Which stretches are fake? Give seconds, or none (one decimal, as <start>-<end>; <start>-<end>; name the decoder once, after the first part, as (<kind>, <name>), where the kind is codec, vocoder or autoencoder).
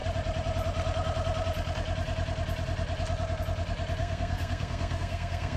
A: 4.0-5.6 (codec, SNAC)